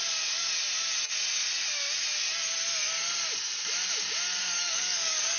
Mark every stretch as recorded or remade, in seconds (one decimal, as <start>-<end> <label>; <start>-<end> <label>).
0.0-4.4 recorded; 4.4-5.4 remade